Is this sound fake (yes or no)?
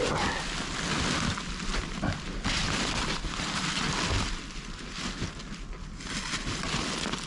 no